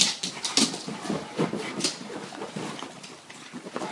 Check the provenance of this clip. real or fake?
real